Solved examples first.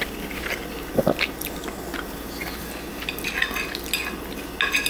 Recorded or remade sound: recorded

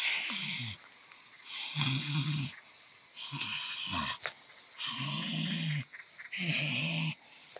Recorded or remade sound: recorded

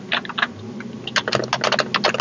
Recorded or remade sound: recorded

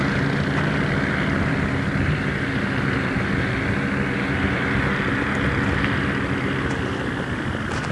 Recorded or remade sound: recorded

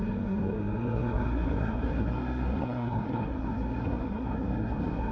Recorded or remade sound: remade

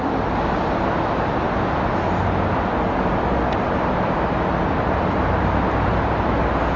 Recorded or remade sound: recorded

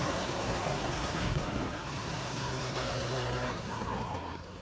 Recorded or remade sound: remade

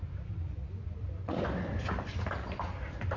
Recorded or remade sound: recorded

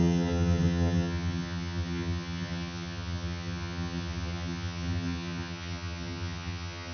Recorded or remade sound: remade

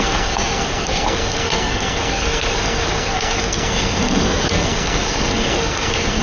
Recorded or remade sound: remade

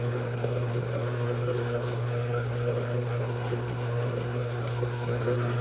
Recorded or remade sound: remade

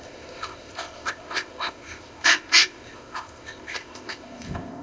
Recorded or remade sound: remade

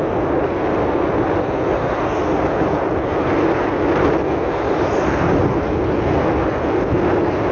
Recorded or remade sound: recorded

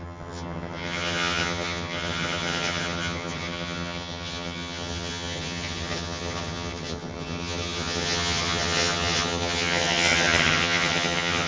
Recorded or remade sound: remade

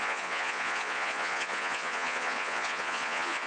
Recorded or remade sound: remade